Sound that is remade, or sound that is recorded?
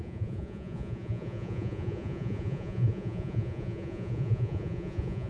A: remade